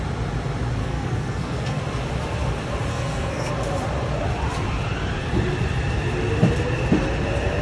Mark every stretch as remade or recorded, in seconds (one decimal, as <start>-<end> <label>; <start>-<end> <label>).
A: 0.0-0.8 recorded; 0.8-1.8 remade; 1.8-2.9 recorded; 2.9-3.5 remade; 3.5-7.6 recorded